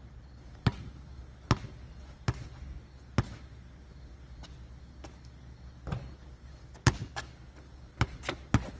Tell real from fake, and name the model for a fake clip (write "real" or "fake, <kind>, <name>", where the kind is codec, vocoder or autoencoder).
real